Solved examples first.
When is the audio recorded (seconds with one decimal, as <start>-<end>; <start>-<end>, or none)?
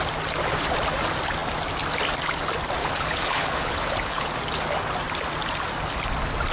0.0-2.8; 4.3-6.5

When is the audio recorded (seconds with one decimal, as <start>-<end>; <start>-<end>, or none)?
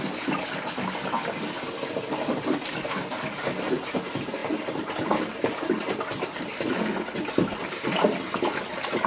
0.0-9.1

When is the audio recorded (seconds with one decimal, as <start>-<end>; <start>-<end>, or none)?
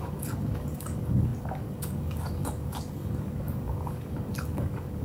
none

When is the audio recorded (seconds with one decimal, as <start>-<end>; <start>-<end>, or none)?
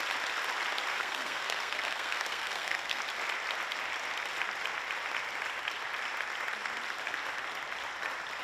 0.0-0.9; 3.0-8.4